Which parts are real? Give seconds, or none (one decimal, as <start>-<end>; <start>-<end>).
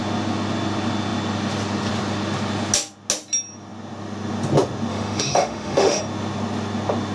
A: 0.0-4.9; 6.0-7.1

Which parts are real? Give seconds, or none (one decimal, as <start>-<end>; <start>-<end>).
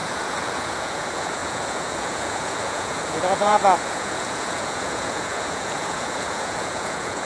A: none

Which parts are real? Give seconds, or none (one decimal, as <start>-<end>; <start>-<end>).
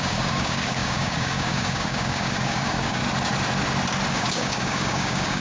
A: 3.0-4.1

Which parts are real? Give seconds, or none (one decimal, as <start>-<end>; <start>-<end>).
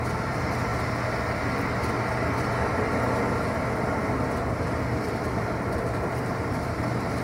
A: 0.7-5.0